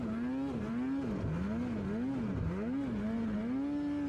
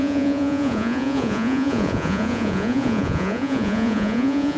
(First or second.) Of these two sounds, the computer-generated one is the second